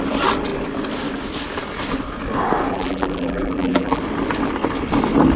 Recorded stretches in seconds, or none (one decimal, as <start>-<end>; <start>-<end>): 0.0-2.7; 4.0-5.4